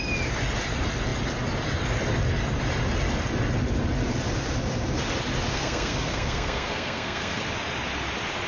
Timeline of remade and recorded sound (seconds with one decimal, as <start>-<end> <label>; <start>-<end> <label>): 0.0-5.5 recorded; 5.5-7.4 remade; 7.4-8.5 recorded